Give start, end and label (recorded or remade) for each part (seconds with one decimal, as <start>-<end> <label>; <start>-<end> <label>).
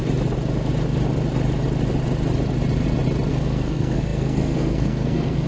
0.0-3.3 recorded; 3.3-5.5 remade